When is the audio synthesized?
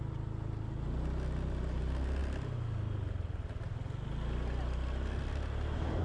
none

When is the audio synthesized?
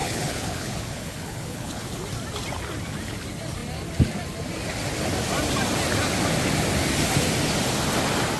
0.0-2.0 (codec, HILCodec)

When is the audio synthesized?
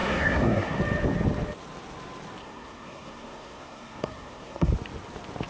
0.0-0.8 (codec, SNAC); 2.4-4.7